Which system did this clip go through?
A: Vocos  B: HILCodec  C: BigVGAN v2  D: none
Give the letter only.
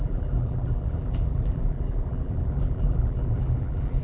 C